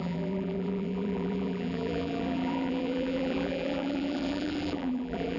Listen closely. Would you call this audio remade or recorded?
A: remade